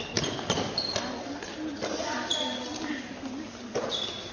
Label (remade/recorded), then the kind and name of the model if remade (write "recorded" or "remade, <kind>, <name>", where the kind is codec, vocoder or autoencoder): recorded